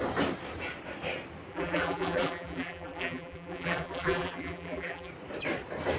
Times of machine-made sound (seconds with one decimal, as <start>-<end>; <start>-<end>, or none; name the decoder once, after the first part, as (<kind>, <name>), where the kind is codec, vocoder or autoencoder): 1.5-5.1 (vocoder, BigVGAN v2)